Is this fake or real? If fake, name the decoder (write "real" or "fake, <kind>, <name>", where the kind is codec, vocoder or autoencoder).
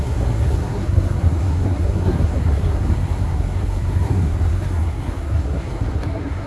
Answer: fake, codec, SNAC